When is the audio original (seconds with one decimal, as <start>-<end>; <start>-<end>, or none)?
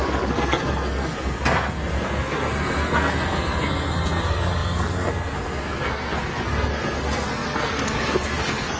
none